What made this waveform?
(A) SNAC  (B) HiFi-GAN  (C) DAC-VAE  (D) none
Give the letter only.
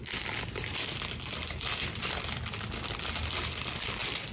D